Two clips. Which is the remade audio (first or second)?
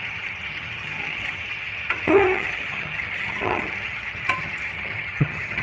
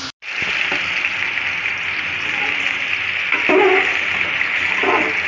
first